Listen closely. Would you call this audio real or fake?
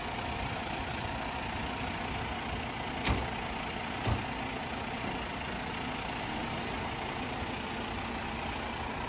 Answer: real